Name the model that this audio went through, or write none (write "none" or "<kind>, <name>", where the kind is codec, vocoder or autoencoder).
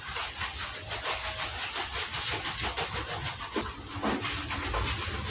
none